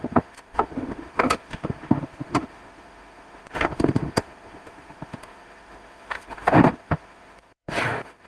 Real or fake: fake